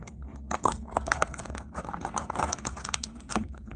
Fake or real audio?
fake